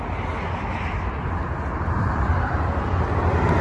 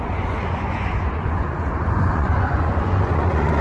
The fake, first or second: second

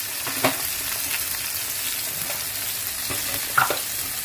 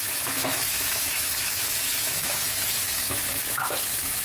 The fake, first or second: second